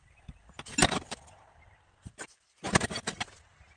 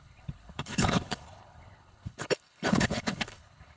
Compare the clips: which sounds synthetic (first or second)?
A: second